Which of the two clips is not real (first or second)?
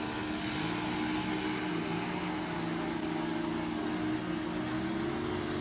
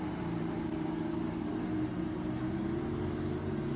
second